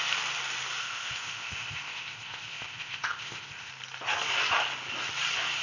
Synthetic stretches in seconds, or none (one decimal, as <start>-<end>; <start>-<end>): 0.8-3.7